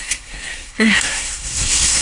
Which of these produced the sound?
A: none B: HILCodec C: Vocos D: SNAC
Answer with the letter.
D